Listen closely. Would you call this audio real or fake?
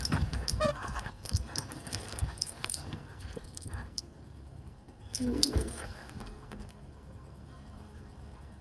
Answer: fake